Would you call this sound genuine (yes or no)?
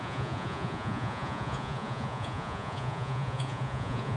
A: no